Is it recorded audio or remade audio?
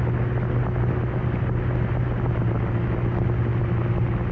recorded